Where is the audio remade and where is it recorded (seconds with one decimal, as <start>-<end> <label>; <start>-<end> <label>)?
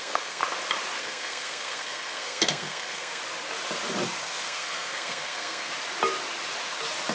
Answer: 0.0-0.4 remade; 0.4-1.0 recorded; 1.0-3.2 remade; 3.2-4.2 recorded; 4.2-5.7 remade; 5.7-7.1 recorded